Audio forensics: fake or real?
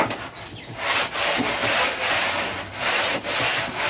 real